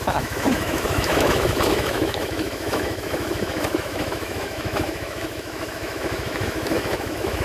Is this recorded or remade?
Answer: remade